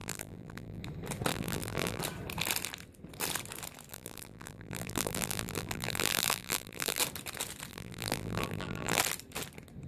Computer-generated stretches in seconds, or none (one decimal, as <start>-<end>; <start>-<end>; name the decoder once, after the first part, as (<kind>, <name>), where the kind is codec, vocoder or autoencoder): 0.0-0.8 (vocoder, BigVGAN v2); 1.3-2.0; 3.9-7.0; 7.7-9.0